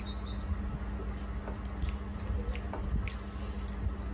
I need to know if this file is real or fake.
real